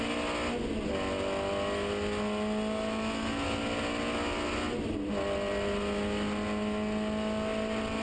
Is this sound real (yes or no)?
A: yes